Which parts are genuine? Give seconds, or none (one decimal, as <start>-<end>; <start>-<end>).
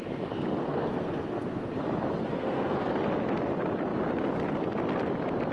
0.0-0.6; 1.7-2.3; 2.9-5.5